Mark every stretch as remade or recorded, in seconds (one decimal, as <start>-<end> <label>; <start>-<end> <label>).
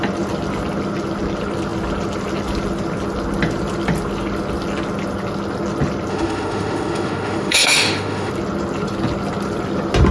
0.0-6.1 recorded; 6.1-8.3 remade; 8.3-10.1 recorded